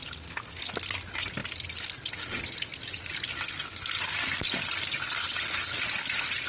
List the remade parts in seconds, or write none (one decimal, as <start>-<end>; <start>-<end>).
none

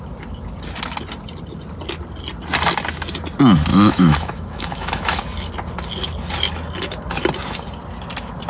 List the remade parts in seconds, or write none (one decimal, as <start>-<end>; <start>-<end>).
3.7-5.2